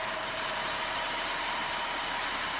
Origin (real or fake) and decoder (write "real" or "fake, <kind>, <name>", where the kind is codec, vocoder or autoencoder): fake, vocoder, BigVGAN v2